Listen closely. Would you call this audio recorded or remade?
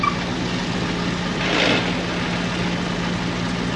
recorded